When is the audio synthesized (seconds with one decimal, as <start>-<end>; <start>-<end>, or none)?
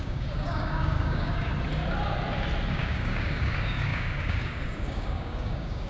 0.0-1.5; 2.7-5.9